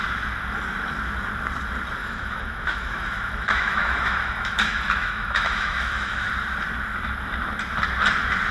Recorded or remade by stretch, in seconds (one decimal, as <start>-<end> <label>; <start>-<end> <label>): 0.0-2.0 recorded; 2.0-6.3 remade; 6.3-8.5 recorded